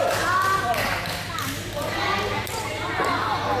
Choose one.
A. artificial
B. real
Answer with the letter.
B